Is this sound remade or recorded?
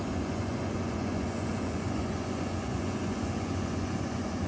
remade